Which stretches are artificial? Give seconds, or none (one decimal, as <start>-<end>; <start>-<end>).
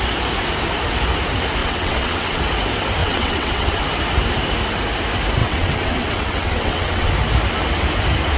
1.6-2.4; 3.0-3.8; 5.4-7.1